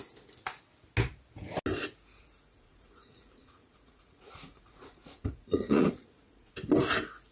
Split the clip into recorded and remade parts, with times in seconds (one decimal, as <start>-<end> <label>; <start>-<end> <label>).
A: 0.0-2.1 recorded; 2.1-6.5 remade; 6.5-7.3 recorded